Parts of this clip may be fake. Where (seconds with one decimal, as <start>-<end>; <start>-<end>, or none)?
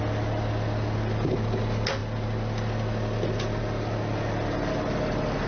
none